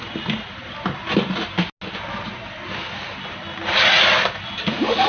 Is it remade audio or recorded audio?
recorded